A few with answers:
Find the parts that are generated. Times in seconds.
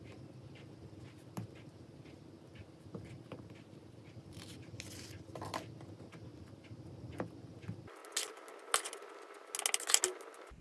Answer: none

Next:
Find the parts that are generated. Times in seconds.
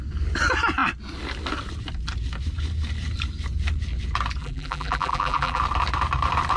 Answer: 4.4-5.6 (vocoder, BigVGAN v2)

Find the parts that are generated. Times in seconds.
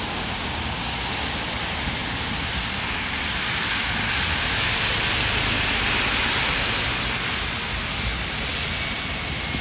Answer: none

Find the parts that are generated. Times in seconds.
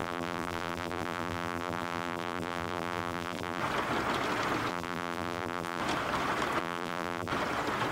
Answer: 0.0-3.6 (vocoder, BigVGAN v2); 4.7-5.8; 6.6-7.3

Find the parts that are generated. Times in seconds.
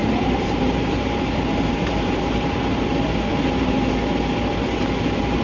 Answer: 0.0-2.9 (vocoder, BigVGAN v2); 3.3-3.9